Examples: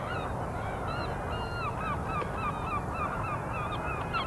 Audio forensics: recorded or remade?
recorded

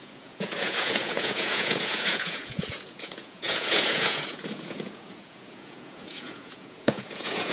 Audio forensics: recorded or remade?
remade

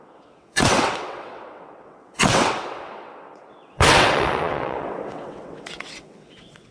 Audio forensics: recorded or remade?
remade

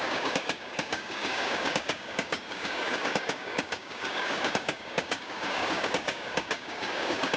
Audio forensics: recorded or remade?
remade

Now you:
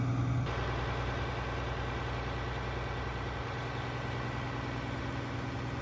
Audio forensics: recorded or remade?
recorded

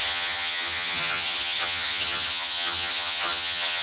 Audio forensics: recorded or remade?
remade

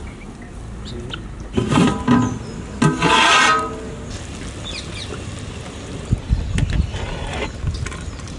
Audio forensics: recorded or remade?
recorded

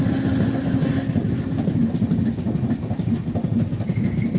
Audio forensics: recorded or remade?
recorded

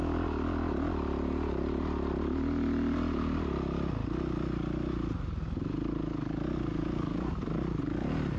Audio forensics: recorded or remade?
recorded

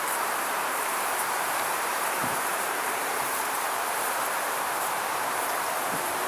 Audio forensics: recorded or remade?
remade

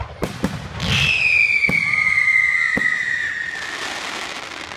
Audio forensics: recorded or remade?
recorded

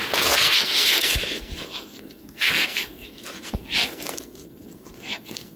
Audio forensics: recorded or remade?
remade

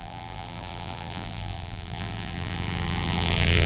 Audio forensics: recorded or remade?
remade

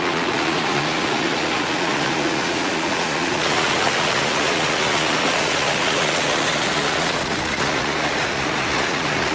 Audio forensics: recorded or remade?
remade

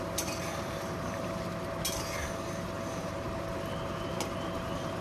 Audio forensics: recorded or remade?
recorded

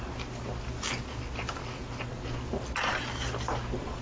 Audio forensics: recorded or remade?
recorded